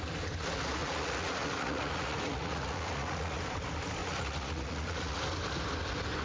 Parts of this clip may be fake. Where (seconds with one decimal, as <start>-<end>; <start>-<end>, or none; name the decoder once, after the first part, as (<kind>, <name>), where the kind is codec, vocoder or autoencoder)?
0.8-3.4 (vocoder, Vocos); 4.0-5.2